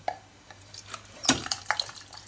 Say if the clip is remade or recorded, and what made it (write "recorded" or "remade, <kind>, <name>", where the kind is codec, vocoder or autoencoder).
remade, vocoder, BigVGAN v2